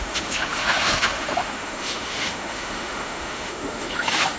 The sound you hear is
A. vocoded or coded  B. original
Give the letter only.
A